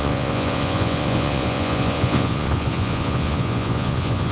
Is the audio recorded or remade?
remade